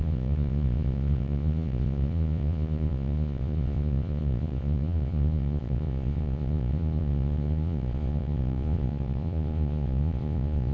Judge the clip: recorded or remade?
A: remade